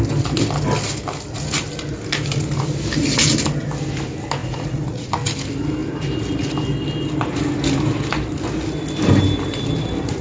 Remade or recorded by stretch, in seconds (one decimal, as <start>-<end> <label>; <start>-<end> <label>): 0.0-4.4 recorded; 4.4-5.1 remade; 5.1-10.2 recorded